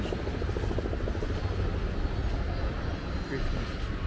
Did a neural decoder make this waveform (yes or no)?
no